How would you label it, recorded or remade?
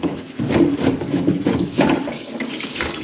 remade